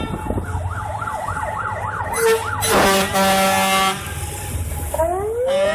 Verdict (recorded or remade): recorded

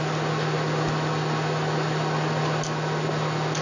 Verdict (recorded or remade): recorded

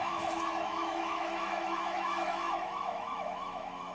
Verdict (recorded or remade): remade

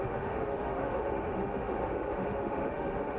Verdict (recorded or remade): remade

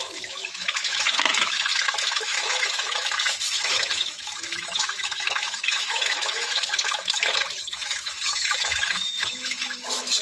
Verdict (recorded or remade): remade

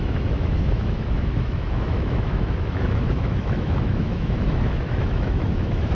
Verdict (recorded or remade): remade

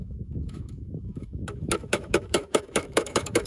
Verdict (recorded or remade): remade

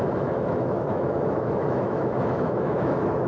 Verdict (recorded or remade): remade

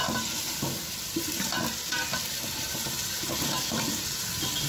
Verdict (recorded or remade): recorded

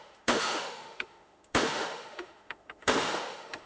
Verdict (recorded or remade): remade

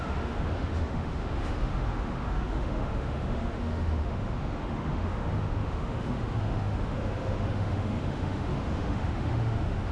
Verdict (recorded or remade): remade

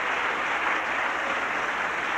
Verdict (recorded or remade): recorded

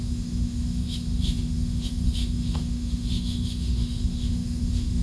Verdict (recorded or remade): remade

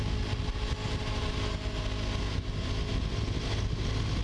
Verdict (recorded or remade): recorded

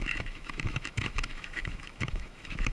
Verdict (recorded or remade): remade